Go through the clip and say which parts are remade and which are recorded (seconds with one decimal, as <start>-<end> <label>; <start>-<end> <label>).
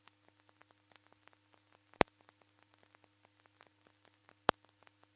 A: 0.0-4.2 recorded; 4.2-4.8 remade; 4.8-5.2 recorded